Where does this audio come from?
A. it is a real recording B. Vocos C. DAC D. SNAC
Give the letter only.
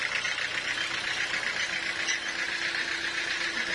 A